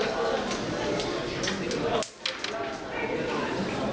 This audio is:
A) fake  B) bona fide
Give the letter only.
B